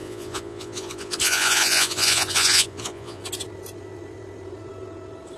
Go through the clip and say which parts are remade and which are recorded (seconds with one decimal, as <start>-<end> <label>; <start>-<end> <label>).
0.0-3.2 remade; 3.2-5.4 recorded